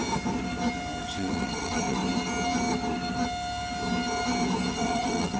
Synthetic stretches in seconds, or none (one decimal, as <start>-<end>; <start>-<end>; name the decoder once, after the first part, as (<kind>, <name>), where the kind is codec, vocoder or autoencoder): 1.0-2.0 (vocoder, WaveNeXt); 4.7-5.4